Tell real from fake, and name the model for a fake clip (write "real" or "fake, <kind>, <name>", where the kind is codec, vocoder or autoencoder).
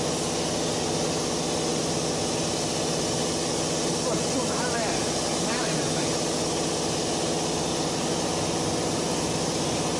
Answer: real